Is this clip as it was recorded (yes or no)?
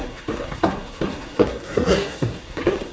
no